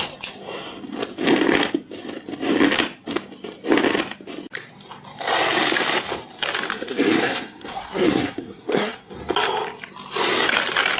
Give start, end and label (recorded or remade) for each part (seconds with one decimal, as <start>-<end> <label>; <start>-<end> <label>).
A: 0.0-6.7 recorded; 6.7-9.1 remade; 9.1-11.0 recorded